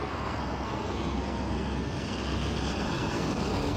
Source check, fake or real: fake